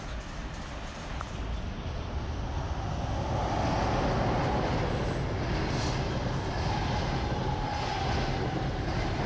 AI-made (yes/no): no